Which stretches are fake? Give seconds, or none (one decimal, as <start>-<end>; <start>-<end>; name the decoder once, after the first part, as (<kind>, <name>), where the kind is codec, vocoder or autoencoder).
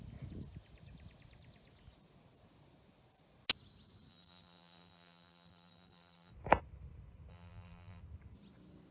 4.1-6.3 (vocoder, BigVGAN v2); 7.3-8.0